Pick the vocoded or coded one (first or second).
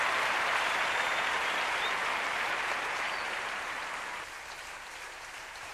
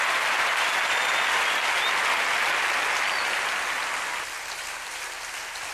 first